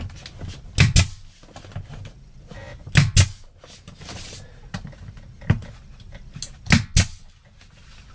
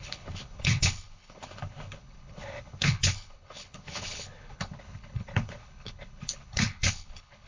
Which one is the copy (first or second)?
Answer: second